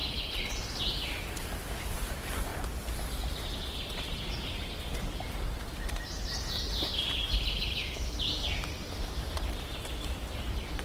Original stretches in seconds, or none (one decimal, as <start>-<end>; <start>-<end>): 0.0-5.7